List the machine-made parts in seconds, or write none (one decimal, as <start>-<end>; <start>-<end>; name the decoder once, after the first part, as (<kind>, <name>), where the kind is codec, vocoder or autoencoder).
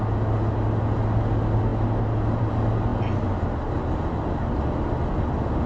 none